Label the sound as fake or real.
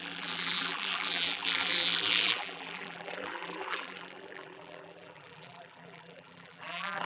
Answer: fake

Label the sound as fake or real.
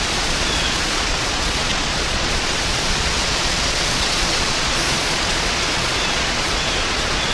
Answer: fake